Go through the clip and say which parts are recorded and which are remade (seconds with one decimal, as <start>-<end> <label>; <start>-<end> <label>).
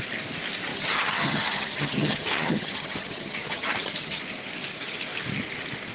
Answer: 0.0-0.7 recorded; 0.7-4.2 remade; 4.2-5.9 recorded